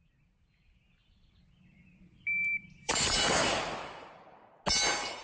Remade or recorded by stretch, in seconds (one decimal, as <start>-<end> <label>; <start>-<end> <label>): 0.0-1.0 recorded; 1.0-4.1 remade; 4.1-5.2 recorded